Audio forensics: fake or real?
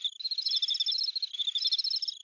real